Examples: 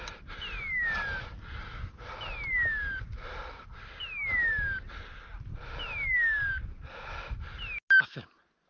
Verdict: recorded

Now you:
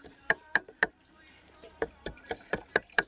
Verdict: remade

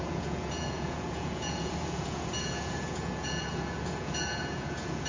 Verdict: remade